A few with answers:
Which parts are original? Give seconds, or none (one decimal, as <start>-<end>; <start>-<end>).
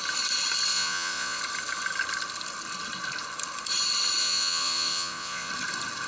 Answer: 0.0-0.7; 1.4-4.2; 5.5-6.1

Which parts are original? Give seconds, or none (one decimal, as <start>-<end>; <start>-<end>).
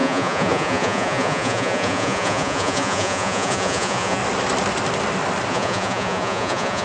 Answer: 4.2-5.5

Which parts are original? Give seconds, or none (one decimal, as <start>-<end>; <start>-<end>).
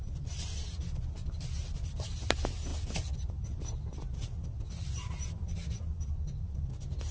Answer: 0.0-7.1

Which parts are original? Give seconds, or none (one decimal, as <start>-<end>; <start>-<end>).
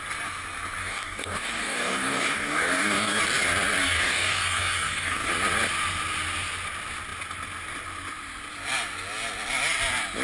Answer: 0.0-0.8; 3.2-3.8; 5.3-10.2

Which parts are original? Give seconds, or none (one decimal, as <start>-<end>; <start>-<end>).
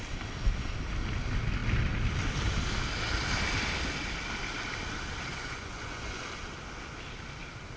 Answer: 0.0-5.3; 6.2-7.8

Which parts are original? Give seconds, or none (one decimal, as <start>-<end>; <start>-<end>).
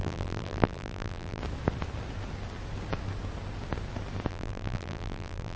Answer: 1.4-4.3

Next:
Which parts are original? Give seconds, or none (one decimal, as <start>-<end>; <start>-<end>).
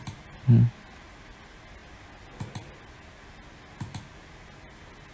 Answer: 0.0-5.1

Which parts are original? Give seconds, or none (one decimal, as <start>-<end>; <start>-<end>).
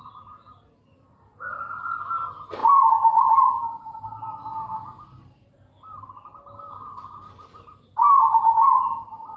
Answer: 0.0-9.4